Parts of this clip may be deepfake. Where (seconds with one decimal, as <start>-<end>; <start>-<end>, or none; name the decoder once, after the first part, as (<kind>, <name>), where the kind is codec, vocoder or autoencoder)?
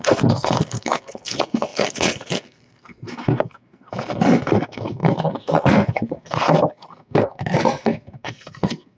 0.0-9.0 (codec, SNAC)